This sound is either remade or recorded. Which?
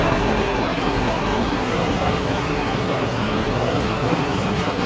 remade